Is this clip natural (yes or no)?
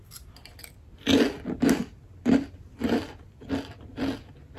yes